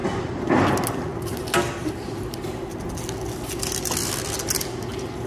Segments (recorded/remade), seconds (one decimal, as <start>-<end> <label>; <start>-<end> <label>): 0.0-5.3 recorded